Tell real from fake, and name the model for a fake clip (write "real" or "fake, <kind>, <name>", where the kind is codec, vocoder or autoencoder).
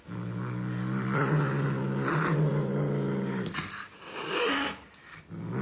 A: real